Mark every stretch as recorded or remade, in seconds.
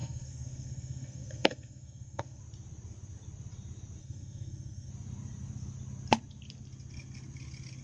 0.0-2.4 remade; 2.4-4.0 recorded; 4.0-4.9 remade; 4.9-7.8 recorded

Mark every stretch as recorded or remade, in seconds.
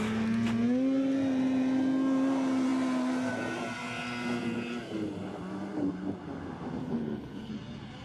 0.0-6.8 recorded; 6.8-7.5 remade; 7.5-8.0 recorded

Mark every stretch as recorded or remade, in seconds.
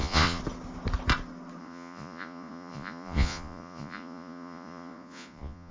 0.0-0.4 remade; 0.4-1.6 recorded; 1.6-5.7 remade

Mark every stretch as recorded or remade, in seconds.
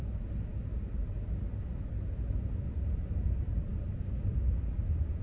0.0-5.2 recorded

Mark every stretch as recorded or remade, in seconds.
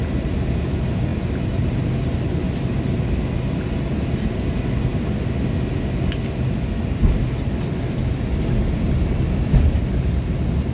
0.0-10.7 recorded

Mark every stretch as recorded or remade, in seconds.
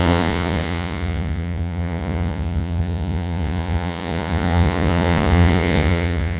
0.0-6.4 remade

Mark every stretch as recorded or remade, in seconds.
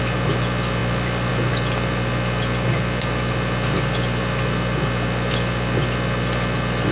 0.0-0.8 recorded; 0.8-1.3 remade; 1.3-6.9 recorded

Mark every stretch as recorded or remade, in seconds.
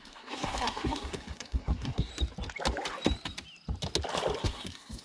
0.0-2.1 remade; 2.1-4.4 recorded; 4.4-5.0 remade